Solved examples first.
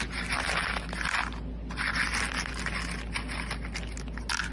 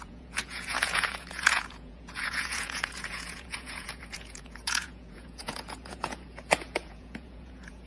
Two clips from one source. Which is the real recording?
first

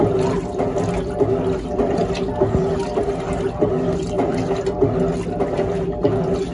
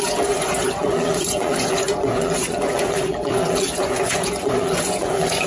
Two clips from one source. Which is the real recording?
first